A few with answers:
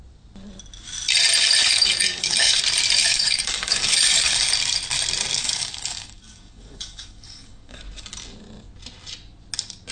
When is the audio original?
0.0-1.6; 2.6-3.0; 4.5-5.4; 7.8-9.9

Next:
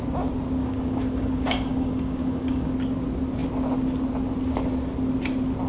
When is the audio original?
0.0-0.6; 2.7-5.7

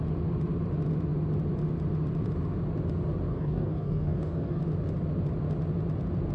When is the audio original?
0.0-3.3; 4.6-6.3

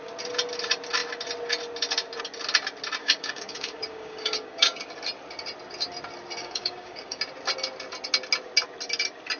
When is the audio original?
0.0-3.0; 4.8-6.4; 7.2-9.4

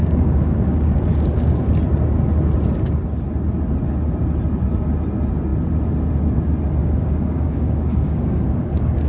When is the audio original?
1.7-6.8